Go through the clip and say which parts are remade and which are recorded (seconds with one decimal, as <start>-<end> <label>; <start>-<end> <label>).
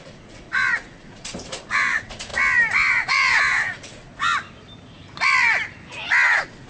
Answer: 0.0-2.3 remade; 2.3-2.9 recorded; 2.9-4.1 remade; 4.1-6.3 recorded; 6.3-6.7 remade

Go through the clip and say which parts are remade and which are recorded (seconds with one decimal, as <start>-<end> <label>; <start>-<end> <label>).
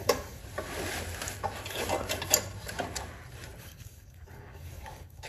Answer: 0.0-0.4 remade; 0.4-3.6 recorded; 3.6-5.3 remade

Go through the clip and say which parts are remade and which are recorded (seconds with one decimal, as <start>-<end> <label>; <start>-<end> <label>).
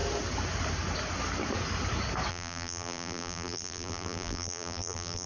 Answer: 0.0-2.3 recorded; 2.3-5.3 remade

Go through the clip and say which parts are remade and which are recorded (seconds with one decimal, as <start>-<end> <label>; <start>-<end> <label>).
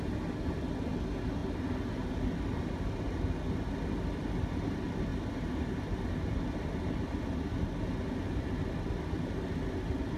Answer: 0.0-10.2 recorded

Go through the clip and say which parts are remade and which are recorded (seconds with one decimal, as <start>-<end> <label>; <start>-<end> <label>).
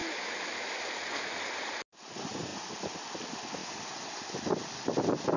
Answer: 0.0-0.8 remade; 0.8-5.4 recorded